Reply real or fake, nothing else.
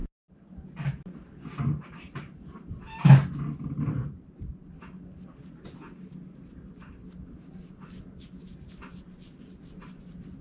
real